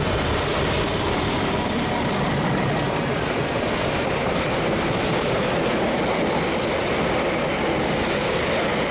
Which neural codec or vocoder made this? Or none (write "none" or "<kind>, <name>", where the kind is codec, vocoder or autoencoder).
none